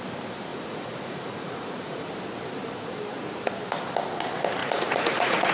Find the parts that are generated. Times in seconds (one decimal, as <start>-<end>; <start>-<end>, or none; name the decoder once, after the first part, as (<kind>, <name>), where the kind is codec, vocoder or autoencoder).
0.5-2.1 (vocoder, Vocos); 4.6-5.5